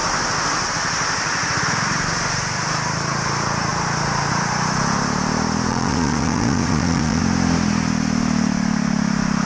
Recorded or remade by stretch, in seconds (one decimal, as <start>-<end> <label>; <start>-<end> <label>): 0.0-5.7 recorded; 5.7-7.2 remade; 7.2-9.5 recorded